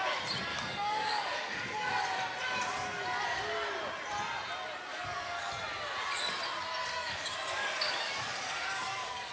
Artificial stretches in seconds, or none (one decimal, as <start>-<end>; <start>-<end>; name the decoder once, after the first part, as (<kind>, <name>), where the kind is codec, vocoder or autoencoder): 0.5-1.9 (codec, DAC); 4.9-5.5; 7.0-9.3

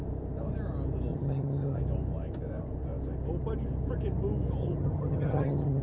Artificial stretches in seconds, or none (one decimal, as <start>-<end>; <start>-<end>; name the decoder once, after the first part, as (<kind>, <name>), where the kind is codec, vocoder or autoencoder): 1.1-1.8 (vocoder, HiFi-GAN); 4.6-5.8

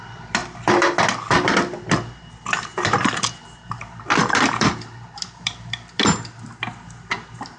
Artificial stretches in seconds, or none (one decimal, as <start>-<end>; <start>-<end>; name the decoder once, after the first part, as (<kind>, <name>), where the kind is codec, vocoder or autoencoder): 0.0-7.6 (vocoder, BigVGAN v2)

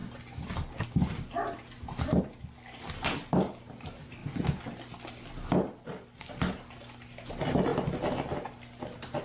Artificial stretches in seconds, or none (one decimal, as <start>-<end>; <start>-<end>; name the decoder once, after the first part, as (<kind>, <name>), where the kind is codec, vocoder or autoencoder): none